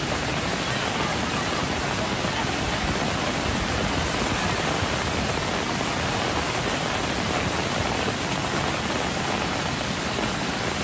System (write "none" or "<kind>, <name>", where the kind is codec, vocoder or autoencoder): none